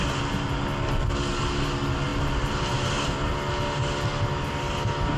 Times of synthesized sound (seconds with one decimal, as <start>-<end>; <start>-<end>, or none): none